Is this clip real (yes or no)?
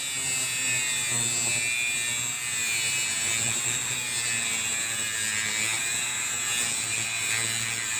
yes